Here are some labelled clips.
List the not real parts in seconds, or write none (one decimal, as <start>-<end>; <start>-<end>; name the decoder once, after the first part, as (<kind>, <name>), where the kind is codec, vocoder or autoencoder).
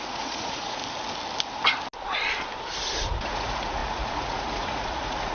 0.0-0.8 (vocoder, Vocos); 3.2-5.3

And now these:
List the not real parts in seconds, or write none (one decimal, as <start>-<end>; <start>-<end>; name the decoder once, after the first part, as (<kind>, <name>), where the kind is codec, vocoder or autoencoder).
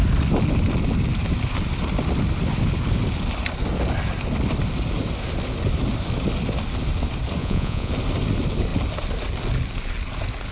7.4-7.9 (vocoder, Vocos)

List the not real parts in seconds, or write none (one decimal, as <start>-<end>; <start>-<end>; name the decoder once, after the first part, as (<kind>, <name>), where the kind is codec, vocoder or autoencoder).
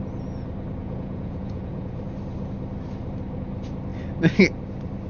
0.8-2.0 (vocoder, Vocos)